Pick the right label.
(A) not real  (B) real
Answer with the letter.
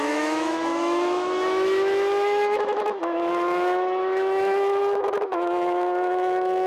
A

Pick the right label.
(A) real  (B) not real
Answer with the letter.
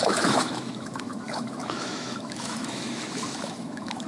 B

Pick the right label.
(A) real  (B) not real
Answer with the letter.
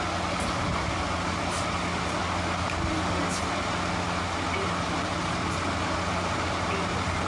A